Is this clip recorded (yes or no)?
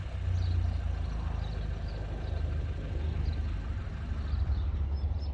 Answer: yes